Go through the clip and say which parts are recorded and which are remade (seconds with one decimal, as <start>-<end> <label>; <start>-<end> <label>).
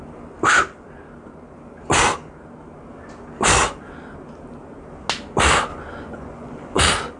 0.0-5.7 recorded; 5.7-6.8 remade; 6.8-7.2 recorded